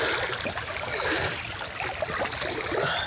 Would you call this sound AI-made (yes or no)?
no